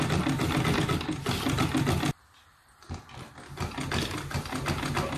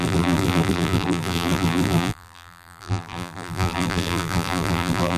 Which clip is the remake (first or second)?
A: second